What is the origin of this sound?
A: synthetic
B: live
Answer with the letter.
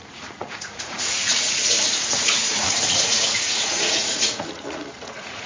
A